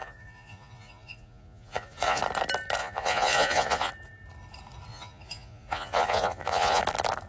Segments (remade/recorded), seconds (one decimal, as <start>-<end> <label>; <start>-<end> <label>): 0.0-2.2 remade; 2.2-2.8 recorded; 2.8-3.9 remade; 3.9-4.9 recorded; 4.9-6.8 remade; 6.8-7.3 recorded